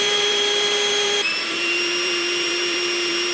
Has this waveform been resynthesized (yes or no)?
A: yes